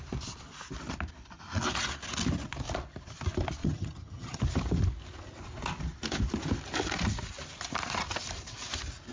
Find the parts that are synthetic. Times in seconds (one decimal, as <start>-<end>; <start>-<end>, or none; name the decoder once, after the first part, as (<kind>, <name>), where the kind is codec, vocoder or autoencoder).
3.6-4.4 (vocoder, HiFi-GAN)